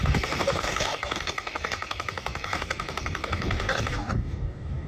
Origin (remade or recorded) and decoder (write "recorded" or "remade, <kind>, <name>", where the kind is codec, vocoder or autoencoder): remade, codec, DAC